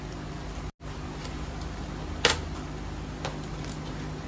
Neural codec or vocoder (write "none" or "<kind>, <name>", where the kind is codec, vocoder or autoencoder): none